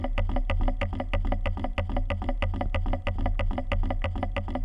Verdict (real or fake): real